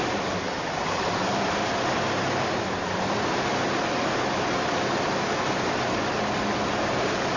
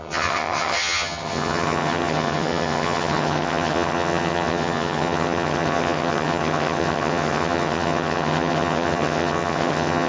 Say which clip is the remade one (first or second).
second